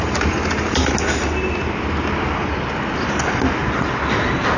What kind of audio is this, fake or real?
real